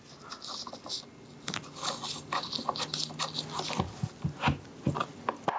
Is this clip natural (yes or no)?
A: yes